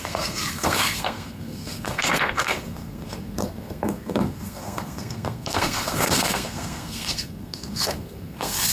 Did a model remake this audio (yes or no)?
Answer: yes